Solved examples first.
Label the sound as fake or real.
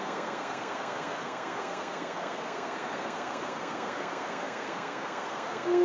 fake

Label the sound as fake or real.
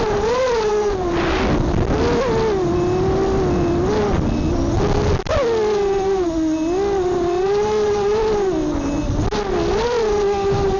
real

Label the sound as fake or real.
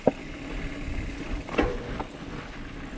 real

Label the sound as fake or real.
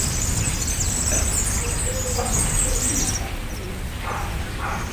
real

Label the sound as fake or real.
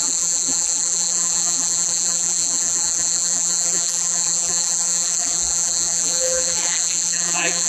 fake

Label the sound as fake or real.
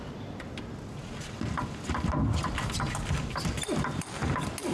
real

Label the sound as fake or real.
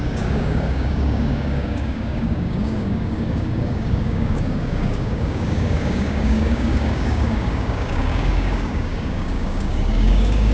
fake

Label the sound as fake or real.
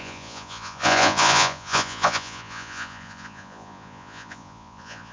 fake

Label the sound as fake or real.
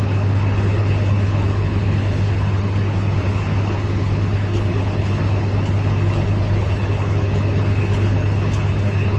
fake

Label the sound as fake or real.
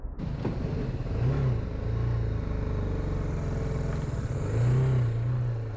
real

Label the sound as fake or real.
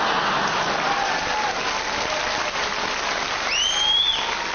real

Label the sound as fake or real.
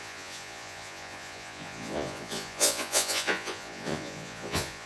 fake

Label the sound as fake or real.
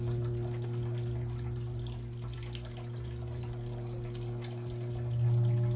real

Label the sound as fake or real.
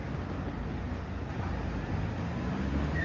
real